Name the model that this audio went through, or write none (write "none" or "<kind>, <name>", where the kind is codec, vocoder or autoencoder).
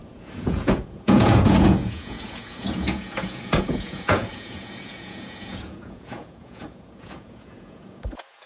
vocoder, Vocos